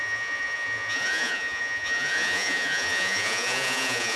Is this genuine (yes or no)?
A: no